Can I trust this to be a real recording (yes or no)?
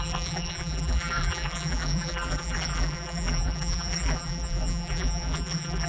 no